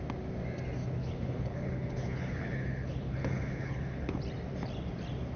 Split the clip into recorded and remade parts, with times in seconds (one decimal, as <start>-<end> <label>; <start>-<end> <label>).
0.0-1.0 recorded; 1.0-4.2 remade; 4.2-5.4 recorded